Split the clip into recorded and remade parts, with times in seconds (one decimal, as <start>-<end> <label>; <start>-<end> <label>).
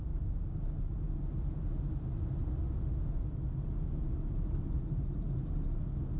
0.0-6.2 recorded